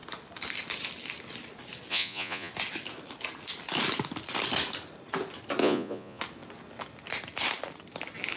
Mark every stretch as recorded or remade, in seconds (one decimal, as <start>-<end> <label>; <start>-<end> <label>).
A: 0.0-1.9 recorded; 1.9-2.5 remade; 2.5-5.6 recorded; 5.6-6.2 remade; 6.2-8.4 recorded